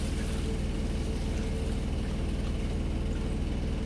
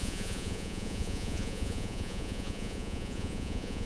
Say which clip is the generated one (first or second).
second